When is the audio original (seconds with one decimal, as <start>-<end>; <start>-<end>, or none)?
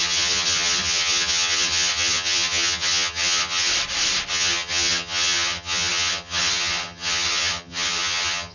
3.7-4.3